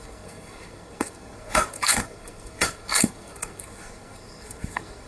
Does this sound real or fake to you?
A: fake